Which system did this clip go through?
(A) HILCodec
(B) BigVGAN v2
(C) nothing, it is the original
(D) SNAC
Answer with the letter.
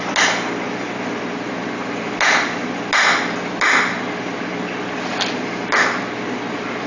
C